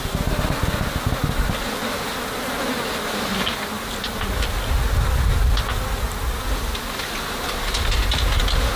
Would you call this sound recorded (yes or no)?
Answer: yes